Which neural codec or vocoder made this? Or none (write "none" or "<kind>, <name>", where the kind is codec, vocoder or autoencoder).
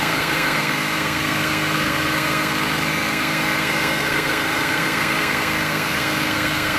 codec, SNAC